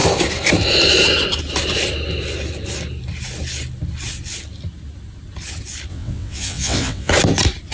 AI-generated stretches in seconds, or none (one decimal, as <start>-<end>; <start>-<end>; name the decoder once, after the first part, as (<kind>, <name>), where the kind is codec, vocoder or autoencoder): 5.9-7.1 (vocoder, WaveNeXt)